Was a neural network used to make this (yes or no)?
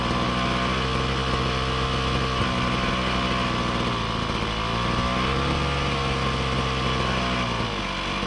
no